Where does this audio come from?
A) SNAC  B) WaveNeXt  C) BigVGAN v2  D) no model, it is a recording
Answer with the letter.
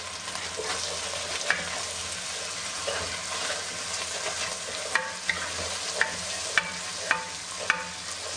D